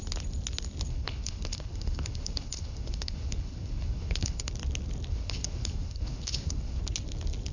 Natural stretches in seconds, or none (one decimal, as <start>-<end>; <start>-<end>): 0.0-0.9; 4.5-5.1; 6.8-7.5